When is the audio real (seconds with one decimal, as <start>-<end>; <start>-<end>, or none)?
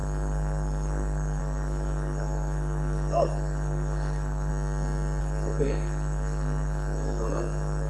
4.5-5.2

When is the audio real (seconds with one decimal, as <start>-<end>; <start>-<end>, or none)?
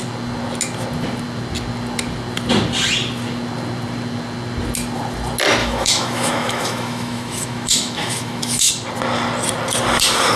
0.0-5.6; 8.7-10.4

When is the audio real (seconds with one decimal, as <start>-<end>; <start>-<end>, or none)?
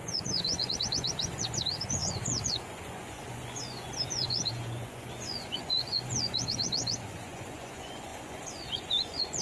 none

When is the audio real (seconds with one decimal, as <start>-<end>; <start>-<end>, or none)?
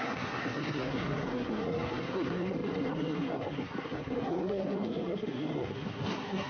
none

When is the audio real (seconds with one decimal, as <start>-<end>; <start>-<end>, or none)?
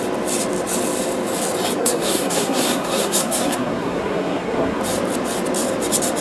0.0-1.8; 4.8-6.2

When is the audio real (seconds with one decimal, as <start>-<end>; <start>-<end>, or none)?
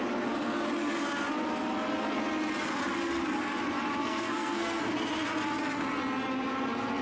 0.0-4.0; 4.8-7.0